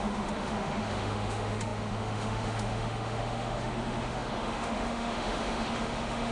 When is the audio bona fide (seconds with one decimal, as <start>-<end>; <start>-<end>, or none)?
none